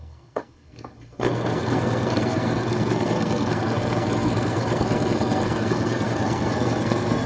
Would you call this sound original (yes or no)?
no